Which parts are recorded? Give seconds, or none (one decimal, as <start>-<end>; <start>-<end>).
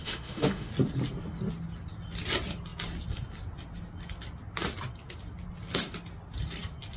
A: 0.7-7.0